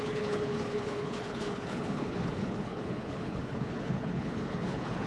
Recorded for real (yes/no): no